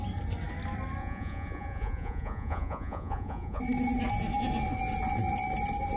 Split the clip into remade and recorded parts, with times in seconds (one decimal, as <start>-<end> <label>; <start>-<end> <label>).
0.0-1.0 recorded; 1.0-3.6 remade; 3.6-6.0 recorded